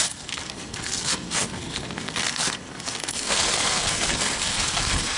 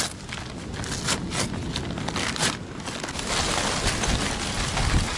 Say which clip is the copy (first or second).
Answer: first